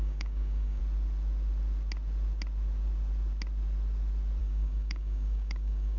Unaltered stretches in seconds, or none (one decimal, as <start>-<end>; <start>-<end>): 0.8-4.4